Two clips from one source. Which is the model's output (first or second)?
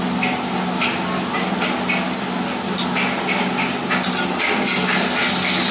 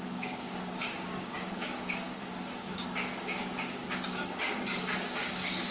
second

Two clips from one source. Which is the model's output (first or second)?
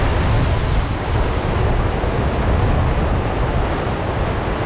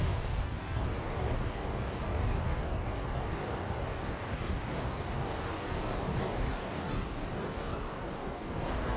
second